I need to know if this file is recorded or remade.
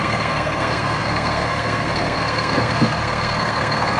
remade